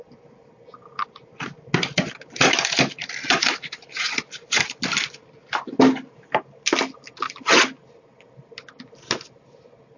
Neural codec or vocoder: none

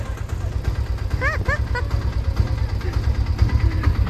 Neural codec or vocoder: none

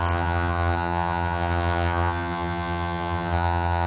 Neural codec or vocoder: vocoder, HiFi-GAN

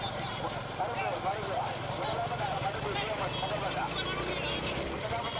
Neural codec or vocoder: none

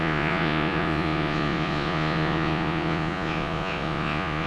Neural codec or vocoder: vocoder, Vocos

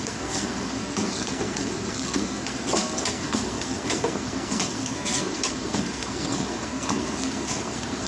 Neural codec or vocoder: codec, SNAC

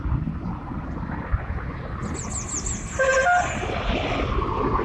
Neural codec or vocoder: none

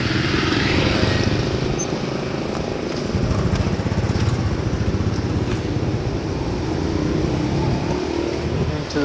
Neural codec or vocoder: none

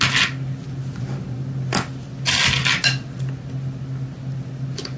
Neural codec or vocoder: none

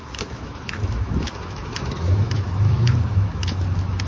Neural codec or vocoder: autoencoder, DAC-VAE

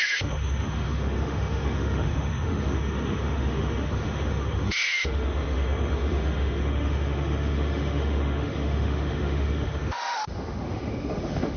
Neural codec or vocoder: autoencoder, DAC-VAE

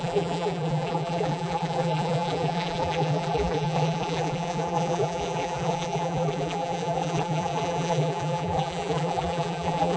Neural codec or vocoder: vocoder, BigVGAN v2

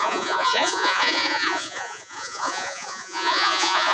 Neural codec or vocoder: vocoder, Vocos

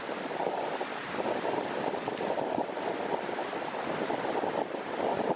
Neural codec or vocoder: none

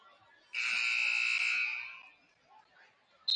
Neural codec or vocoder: none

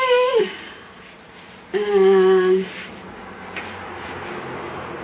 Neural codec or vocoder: vocoder, BigVGAN v2